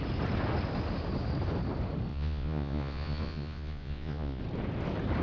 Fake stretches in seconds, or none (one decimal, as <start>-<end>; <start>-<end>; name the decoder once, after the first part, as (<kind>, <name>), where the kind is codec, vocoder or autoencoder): 2.1-4.4 (vocoder, Vocos)